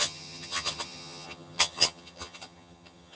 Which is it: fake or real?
fake